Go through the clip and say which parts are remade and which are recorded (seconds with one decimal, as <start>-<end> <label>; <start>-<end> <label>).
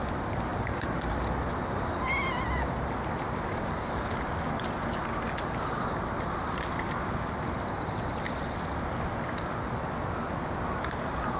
0.0-11.4 recorded